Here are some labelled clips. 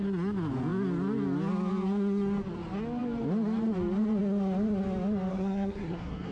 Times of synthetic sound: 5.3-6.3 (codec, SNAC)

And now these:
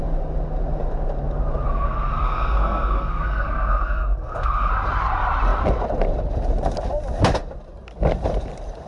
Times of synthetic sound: 1.7-4.7 (codec, SNAC)

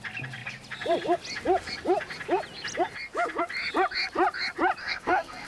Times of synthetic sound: 4.8-5.5 (codec, SNAC)

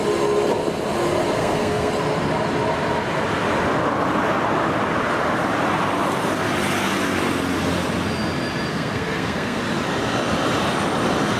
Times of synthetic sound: 1.4-1.9 (codec, SNAC); 8.7-9.6

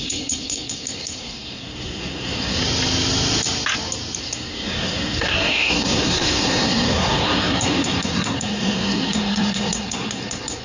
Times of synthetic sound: 0.0-2.6 (codec, SNAC); 4.2-10.6